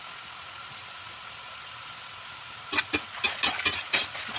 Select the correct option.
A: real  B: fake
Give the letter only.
A